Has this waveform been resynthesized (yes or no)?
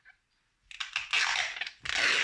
no